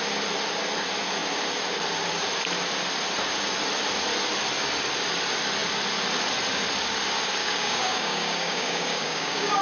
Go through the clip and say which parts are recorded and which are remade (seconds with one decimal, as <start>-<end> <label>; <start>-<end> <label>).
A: 0.0-7.4 recorded; 7.4-9.6 remade